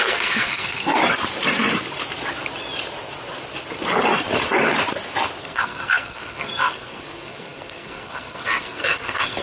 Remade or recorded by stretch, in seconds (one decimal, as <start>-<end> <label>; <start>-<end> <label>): 0.0-1.0 remade; 1.0-5.4 recorded; 5.4-9.4 remade